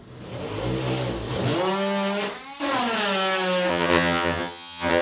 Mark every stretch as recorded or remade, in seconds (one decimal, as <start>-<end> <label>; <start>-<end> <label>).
0.0-3.7 recorded; 3.7-5.0 remade